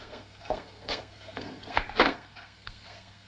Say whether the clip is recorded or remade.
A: remade